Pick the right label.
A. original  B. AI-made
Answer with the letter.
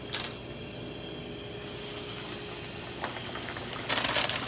A